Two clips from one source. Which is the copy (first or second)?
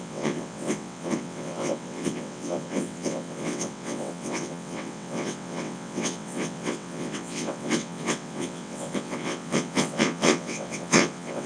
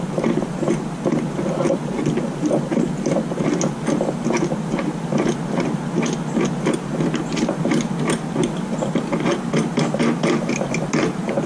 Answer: first